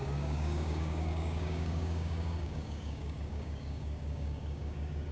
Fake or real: fake